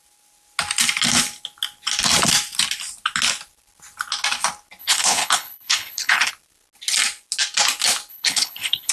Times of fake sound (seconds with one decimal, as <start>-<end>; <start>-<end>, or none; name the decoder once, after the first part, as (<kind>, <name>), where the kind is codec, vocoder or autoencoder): 4.8-6.3 (codec, HILCodec); 8.1-8.9

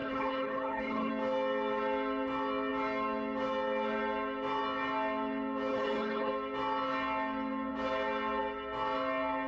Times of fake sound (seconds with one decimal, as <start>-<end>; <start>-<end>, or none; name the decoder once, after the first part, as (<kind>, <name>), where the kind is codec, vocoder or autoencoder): 0.0-1.1 (codec, HILCodec); 5.7-6.3

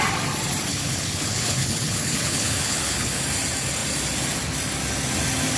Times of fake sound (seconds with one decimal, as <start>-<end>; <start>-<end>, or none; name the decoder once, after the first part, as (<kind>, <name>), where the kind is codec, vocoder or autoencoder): 0.7-3.2 (codec, HILCodec)

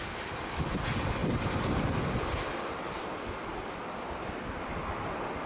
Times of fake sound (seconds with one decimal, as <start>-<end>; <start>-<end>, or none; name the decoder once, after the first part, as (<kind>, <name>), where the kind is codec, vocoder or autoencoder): none